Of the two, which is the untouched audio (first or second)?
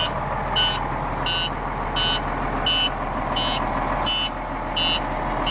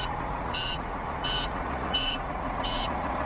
first